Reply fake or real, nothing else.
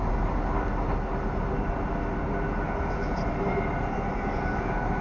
real